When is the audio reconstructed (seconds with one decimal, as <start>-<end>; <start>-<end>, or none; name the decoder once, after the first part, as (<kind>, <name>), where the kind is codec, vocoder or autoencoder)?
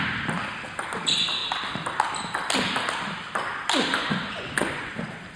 3.9-4.9 (vocoder, Vocos)